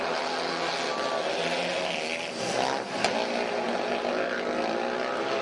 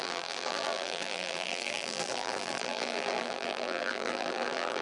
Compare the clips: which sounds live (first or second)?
first